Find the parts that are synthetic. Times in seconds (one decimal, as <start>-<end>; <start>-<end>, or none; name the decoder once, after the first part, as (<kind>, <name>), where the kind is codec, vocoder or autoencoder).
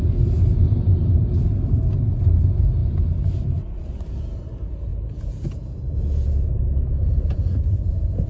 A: 4.9-8.3 (vocoder, Vocos)